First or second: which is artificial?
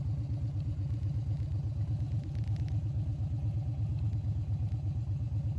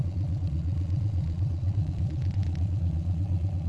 second